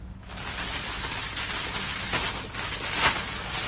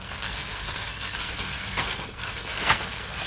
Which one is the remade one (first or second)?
second